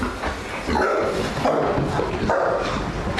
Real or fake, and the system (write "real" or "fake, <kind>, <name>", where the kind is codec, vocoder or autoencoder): real